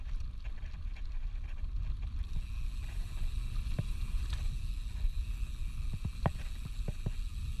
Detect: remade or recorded recorded